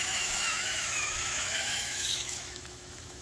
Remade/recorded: remade